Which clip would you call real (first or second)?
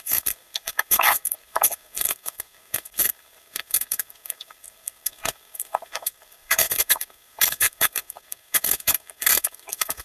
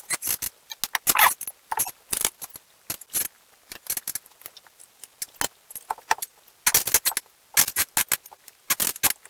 second